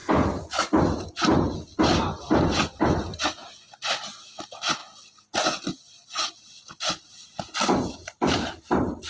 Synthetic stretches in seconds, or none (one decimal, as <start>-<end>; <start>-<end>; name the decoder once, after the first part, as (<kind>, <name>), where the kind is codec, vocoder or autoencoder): none